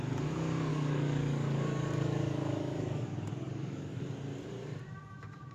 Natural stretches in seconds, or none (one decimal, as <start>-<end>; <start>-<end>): 0.0-0.7; 4.0-5.5